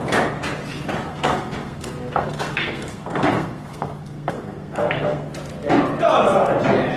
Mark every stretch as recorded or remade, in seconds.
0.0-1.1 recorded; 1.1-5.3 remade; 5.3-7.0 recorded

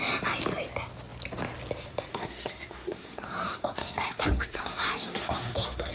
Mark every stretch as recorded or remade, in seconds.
0.0-2.1 recorded; 2.1-5.9 remade

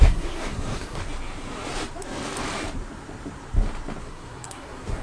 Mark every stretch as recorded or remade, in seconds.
0.0-1.0 remade; 1.0-4.0 recorded; 4.0-5.0 remade

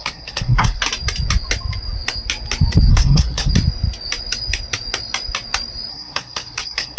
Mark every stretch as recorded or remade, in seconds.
0.0-0.8 remade; 0.8-2.9 recorded; 2.9-3.5 remade; 3.5-5.9 recorded; 5.9-7.0 remade

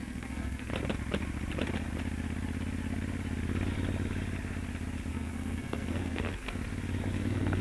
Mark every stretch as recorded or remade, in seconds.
0.0-0.7 remade; 0.7-5.1 recorded; 5.1-6.6 remade; 6.6-7.1 recorded; 7.1-7.6 remade

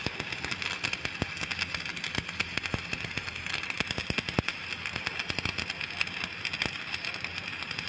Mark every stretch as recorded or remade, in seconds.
0.0-7.9 recorded

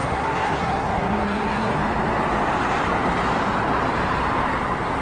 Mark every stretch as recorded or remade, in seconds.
0.0-1.8 remade; 1.8-5.0 recorded